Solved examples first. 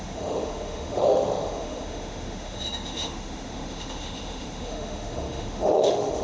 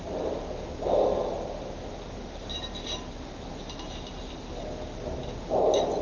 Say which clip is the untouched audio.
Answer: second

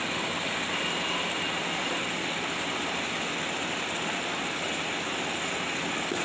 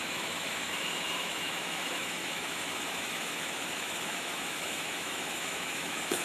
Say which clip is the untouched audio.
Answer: first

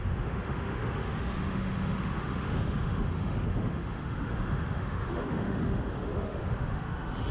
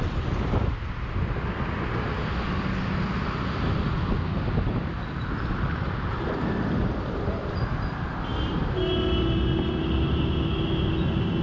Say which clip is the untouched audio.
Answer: second